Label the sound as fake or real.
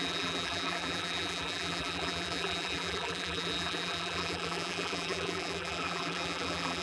fake